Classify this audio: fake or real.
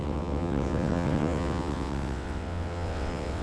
fake